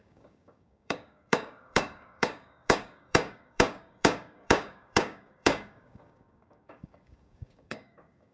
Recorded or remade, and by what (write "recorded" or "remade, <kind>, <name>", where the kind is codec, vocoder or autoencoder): remade, codec, DAC